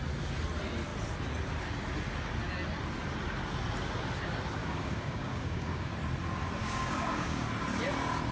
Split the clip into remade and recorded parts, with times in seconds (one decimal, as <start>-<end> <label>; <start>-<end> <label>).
0.0-4.6 recorded; 4.6-5.9 remade; 5.9-6.6 recorded; 6.6-7.5 remade; 7.5-8.3 recorded

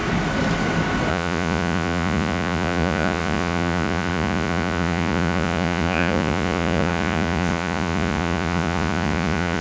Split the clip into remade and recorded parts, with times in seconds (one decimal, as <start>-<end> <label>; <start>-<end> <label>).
0.0-1.1 recorded; 1.1-9.6 remade

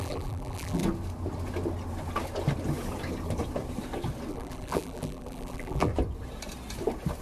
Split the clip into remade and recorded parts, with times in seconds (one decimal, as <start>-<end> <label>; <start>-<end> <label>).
0.0-0.8 remade; 0.8-4.3 recorded; 4.3-5.9 remade; 5.9-7.2 recorded

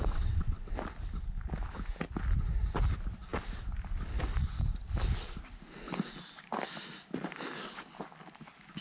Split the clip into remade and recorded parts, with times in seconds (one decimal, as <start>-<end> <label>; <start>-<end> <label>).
0.0-0.7 remade; 0.7-8.8 recorded

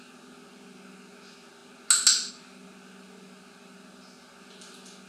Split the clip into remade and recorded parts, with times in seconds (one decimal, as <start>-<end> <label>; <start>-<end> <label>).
0.0-5.1 recorded

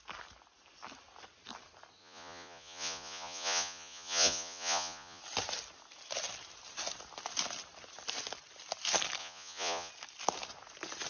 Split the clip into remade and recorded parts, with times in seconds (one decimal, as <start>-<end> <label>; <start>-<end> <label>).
0.0-2.0 recorded; 2.0-5.2 remade; 5.2-9.2 recorded; 9.2-9.9 remade; 9.9-11.1 recorded